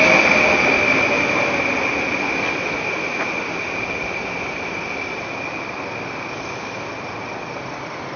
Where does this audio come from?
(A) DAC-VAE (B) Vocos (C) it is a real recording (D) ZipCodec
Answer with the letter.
C